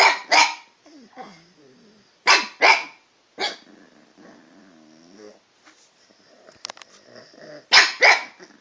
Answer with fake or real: real